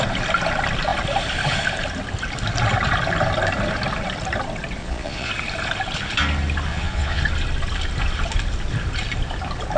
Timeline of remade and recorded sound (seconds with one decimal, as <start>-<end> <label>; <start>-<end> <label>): 0.0-4.8 recorded; 4.8-5.3 remade; 5.3-6.7 recorded; 6.7-7.2 remade; 7.2-9.8 recorded